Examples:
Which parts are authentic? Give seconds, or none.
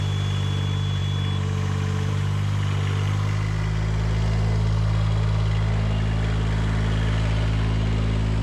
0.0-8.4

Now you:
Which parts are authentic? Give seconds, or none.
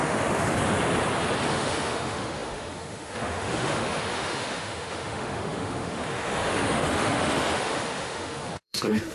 0.6-1.5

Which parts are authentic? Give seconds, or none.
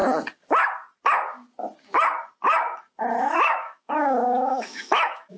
0.0-3.2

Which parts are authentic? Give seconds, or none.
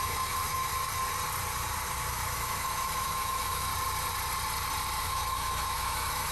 0.7-2.0; 3.7-5.0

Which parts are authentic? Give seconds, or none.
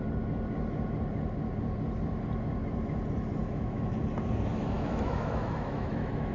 0.0-3.4; 3.9-4.5